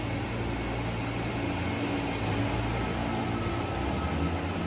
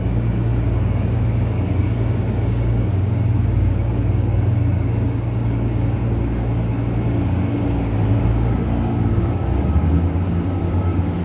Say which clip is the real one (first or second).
first